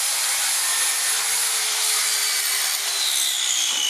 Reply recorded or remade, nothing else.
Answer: recorded